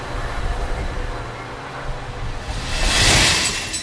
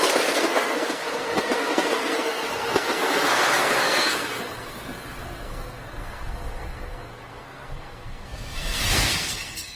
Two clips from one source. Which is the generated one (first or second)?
second